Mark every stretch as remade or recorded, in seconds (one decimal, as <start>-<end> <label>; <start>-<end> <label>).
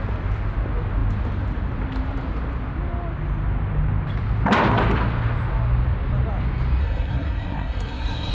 0.0-6.8 recorded; 6.8-8.3 remade